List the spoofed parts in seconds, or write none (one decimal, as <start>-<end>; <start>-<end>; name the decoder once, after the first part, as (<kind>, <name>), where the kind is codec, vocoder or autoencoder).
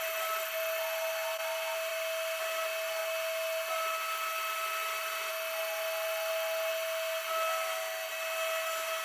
none